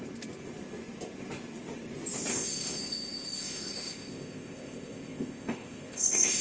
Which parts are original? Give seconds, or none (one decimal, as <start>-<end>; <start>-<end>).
0.0-2.3